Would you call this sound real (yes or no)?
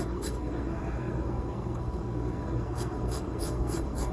no